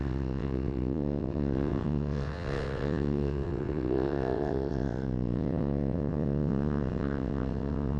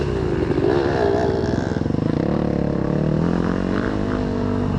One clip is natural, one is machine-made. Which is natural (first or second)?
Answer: second